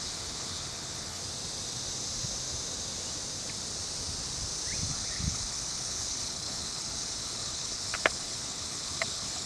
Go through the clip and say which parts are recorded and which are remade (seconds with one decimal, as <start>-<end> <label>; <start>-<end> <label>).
0.0-1.2 remade; 1.2-4.9 recorded; 4.9-9.5 remade